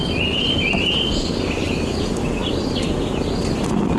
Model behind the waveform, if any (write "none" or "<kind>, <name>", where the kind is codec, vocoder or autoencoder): none